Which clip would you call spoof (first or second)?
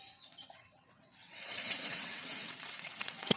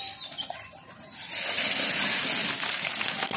first